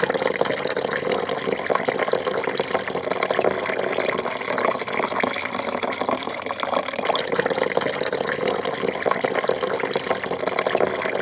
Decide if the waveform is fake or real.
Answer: real